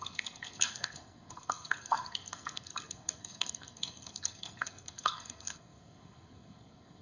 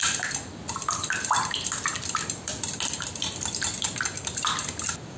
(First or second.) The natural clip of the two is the second